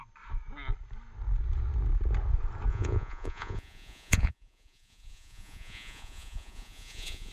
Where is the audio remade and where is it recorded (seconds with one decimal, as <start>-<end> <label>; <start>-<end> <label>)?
0.0-2.7 recorded; 2.7-7.3 remade